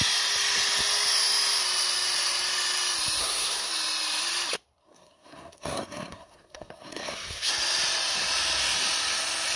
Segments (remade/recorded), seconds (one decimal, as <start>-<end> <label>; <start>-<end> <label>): 0.0-3.2 recorded; 3.2-3.7 remade; 3.7-4.8 recorded; 4.8-7.5 remade; 7.5-9.6 recorded